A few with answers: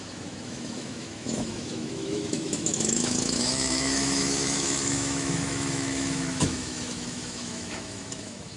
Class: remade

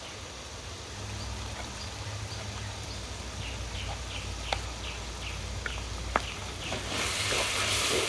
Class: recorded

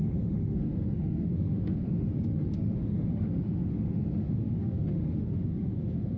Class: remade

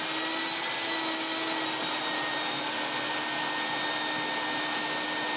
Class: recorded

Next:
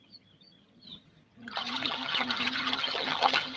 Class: remade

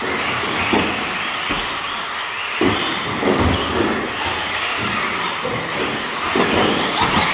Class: recorded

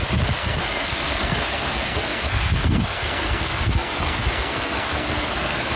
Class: remade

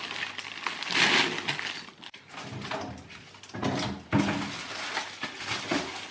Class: recorded